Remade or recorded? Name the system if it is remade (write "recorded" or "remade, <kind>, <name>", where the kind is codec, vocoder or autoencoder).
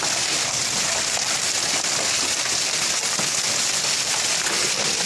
recorded